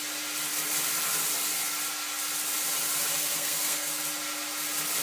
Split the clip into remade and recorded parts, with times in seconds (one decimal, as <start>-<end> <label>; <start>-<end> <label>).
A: 0.0-3.1 recorded; 3.1-4.0 remade; 4.0-5.0 recorded